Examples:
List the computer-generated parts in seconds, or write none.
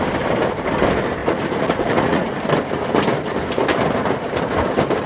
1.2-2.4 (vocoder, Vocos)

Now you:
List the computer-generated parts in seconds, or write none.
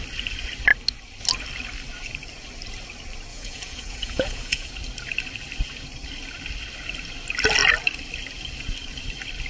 3.3-4.7 (vocoder, Vocos)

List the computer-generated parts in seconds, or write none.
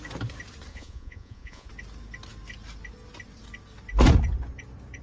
0.7-1.7 (vocoder, Vocos)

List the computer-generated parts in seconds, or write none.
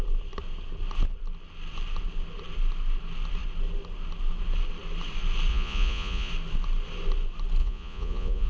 5.5-6.3 (vocoder, Vocos); 7.6-8.5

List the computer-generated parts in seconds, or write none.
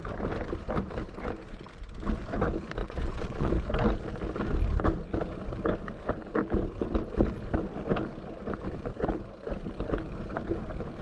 2.8-3.5 (vocoder, Vocos)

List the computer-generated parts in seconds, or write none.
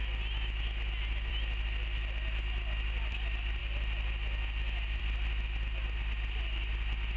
none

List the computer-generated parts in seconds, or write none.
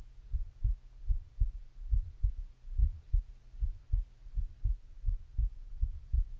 0.0-2.8 (vocoder, Vocos); 4.6-6.4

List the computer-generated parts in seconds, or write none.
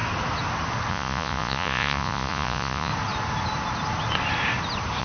0.9-2.9 (vocoder, Vocos)